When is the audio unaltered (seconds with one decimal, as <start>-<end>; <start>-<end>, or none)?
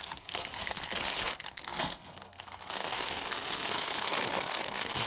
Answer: none